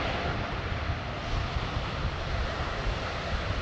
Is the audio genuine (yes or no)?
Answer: yes